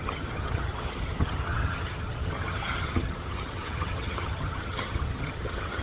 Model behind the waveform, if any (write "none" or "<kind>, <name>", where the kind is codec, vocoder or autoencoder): vocoder, HiFi-GAN